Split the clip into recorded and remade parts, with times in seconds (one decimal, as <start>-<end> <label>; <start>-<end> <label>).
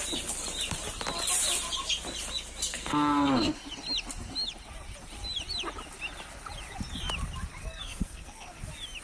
0.0-2.7 recorded; 2.7-3.7 remade; 3.7-7.6 recorded; 7.6-8.6 remade; 8.6-9.0 recorded